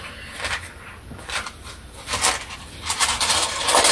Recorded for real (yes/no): yes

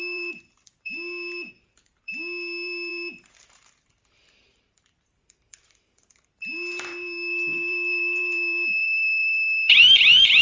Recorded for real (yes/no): no